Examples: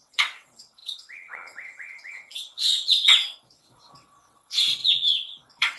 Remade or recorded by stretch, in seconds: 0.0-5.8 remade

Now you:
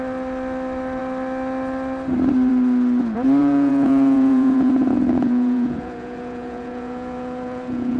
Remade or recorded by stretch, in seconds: 0.0-3.4 recorded; 3.4-8.0 remade

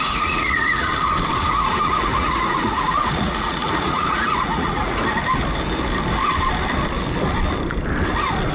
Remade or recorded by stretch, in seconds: 0.0-0.9 remade; 0.9-1.4 recorded; 1.4-5.0 remade; 5.0-8.5 recorded

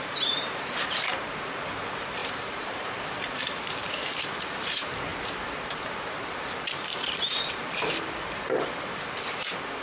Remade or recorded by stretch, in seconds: 0.0-9.8 remade